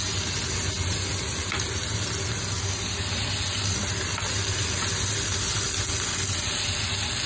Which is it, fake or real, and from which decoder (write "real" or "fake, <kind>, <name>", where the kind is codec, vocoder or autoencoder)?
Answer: real